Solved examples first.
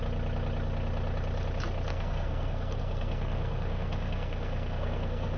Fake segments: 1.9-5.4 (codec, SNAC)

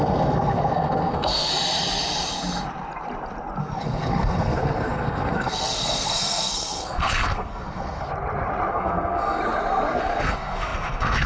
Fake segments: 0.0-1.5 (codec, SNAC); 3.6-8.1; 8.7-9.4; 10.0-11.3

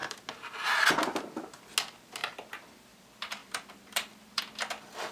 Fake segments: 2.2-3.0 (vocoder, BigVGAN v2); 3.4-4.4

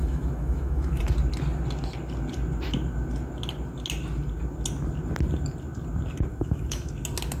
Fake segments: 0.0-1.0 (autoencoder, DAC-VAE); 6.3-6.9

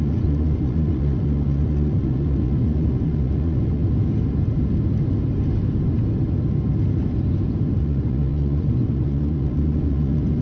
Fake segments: 0.0-3.8 (vocoder, Vocos); 7.8-10.4